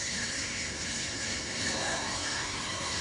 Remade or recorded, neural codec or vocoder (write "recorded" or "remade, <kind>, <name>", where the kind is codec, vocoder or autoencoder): remade, codec, SNAC